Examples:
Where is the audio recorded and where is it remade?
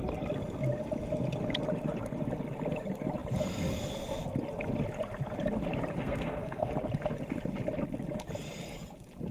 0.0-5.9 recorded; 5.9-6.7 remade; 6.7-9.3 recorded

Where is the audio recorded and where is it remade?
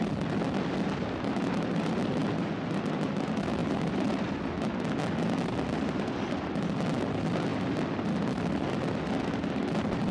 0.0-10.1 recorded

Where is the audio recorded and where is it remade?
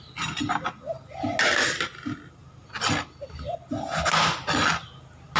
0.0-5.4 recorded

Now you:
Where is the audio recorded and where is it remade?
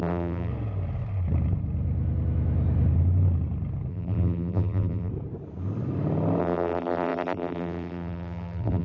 0.0-0.5 remade; 0.5-3.9 recorded; 3.9-5.1 remade; 5.1-6.4 recorded; 6.4-8.8 remade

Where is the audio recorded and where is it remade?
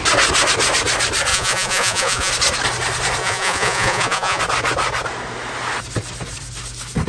0.0-1.3 recorded; 1.3-2.3 remade; 2.3-3.2 recorded; 3.2-4.4 remade; 4.4-7.1 recorded